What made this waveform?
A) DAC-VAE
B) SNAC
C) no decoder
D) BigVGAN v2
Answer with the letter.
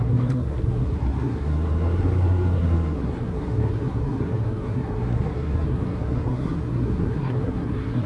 B